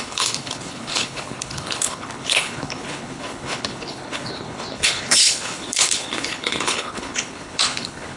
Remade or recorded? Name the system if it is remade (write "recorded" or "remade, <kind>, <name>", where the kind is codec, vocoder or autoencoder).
remade, codec, HILCodec